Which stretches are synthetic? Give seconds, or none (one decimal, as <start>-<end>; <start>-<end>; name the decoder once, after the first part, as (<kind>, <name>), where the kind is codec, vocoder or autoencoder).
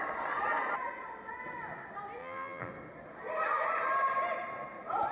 2.2-2.7 (vocoder, BigVGAN v2)